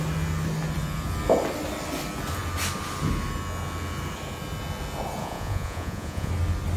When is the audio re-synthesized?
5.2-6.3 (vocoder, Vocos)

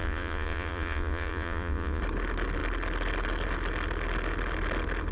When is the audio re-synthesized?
0.0-2.0 (vocoder, Vocos)

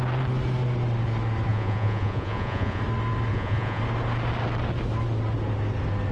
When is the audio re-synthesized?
1.5-2.8 (vocoder, Vocos); 3.3-3.8

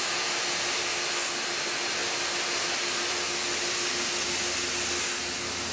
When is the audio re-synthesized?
none

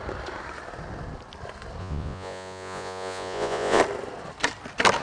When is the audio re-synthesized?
1.8-3.8 (vocoder, Vocos)

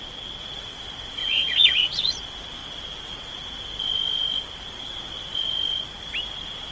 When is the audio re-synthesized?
1.2-2.2 (vocoder, Vocos)